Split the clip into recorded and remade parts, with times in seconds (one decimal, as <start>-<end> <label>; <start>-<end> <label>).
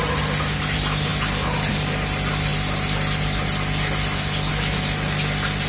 0.0-5.7 recorded